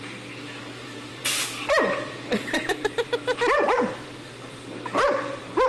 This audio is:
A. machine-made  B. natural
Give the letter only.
A